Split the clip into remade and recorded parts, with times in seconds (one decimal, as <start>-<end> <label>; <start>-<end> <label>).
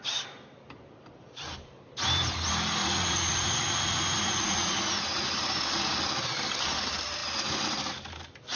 0.0-2.8 recorded; 2.8-5.2 remade; 5.2-8.6 recorded